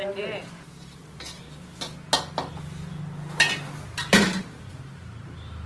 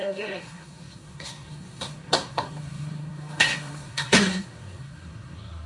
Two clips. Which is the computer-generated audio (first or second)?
second